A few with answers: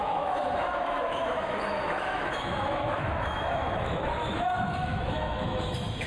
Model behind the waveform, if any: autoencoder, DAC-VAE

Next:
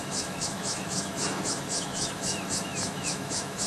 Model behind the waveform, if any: autoencoder, DAC-VAE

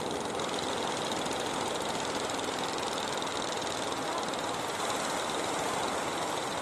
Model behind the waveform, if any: none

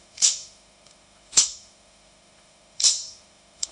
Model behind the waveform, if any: autoencoder, DAC-VAE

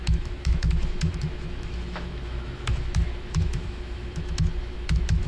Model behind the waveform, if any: autoencoder, DAC-VAE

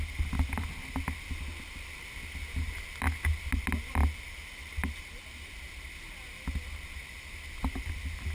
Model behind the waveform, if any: none